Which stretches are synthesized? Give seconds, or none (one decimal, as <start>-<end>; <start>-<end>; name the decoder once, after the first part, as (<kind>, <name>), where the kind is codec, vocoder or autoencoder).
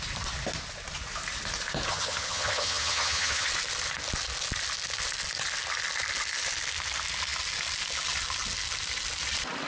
1.9-3.5 (vocoder, HiFi-GAN)